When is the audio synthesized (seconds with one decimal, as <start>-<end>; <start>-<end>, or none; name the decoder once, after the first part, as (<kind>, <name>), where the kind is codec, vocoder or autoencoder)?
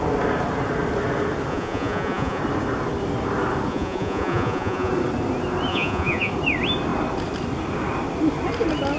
1.5-2.4 (vocoder, Vocos); 3.7-4.9; 5.7-6.3